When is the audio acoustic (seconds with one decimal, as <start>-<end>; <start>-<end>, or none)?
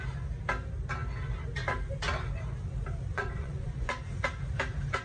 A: 0.0-3.1; 4.1-5.0